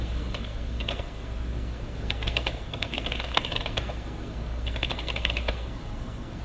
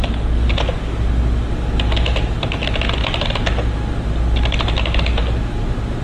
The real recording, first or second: second